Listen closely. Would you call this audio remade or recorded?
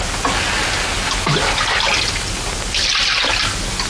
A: recorded